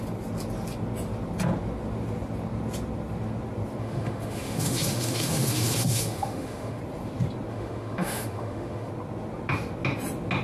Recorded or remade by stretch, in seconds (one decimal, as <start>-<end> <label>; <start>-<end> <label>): 0.0-3.8 recorded; 3.8-6.8 remade; 6.8-7.5 recorded; 7.5-8.9 remade; 8.9-10.4 recorded